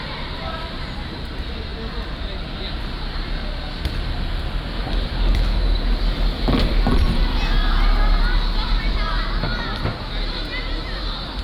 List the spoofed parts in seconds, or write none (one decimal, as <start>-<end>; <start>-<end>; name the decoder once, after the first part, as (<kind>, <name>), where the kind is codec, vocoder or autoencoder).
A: none